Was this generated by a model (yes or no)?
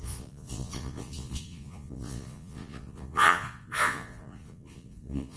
yes